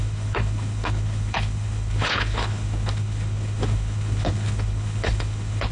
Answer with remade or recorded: remade